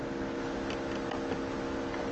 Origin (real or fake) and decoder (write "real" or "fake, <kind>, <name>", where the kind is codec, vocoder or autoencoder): real